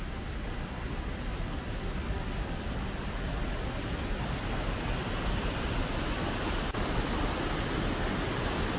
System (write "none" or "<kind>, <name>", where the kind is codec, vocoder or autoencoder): none